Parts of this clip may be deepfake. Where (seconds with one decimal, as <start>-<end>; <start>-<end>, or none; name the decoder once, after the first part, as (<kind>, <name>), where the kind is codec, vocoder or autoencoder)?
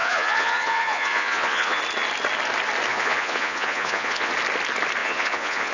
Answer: 0.0-1.8 (vocoder, Vocos); 2.9-4.3; 5.0-5.7